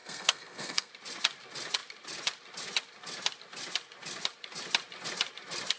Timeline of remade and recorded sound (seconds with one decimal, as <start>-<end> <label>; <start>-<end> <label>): 0.0-0.9 remade; 0.9-5.8 recorded